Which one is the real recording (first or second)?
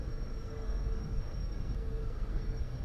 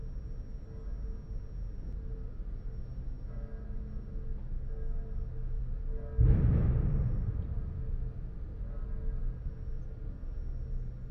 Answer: second